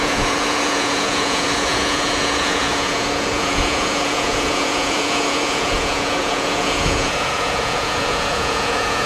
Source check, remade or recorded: remade